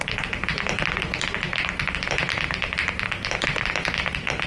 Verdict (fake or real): real